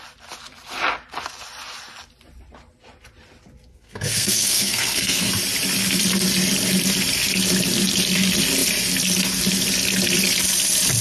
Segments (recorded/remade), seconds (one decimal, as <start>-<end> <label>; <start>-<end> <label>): 0.0-3.7 recorded; 3.7-5.3 remade; 5.3-11.0 recorded